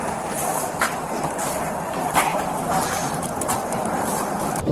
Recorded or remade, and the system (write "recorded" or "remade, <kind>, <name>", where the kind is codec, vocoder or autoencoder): remade, vocoder, BigVGAN v2